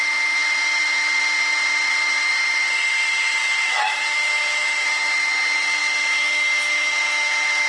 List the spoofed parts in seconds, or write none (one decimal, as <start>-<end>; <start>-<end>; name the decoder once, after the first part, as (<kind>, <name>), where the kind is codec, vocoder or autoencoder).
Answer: 3.4-5.0 (autoencoder, DAC-VAE); 5.8-7.7